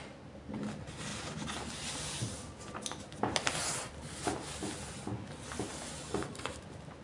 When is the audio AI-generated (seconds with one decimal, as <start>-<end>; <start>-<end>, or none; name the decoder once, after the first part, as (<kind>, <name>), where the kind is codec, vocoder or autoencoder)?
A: none